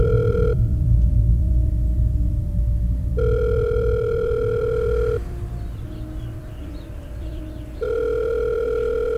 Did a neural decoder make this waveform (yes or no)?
yes